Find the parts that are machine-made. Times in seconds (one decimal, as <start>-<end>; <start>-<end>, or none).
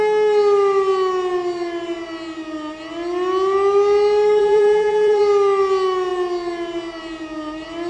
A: 4.4-5.2